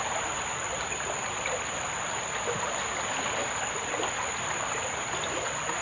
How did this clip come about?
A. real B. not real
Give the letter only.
A